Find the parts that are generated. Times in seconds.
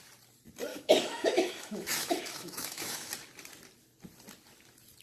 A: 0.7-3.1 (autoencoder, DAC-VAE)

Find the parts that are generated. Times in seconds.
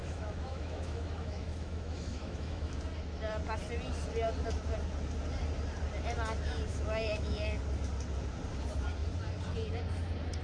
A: 0.0-2.8 (autoencoder, DAC-VAE); 6.7-7.6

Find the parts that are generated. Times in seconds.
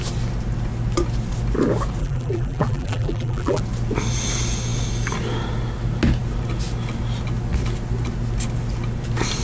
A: 2.0-3.6 (vocoder, BigVGAN v2)